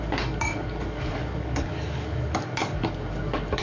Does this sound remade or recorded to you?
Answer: remade